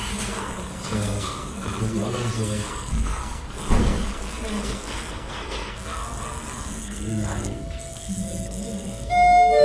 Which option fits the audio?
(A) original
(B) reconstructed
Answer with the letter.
B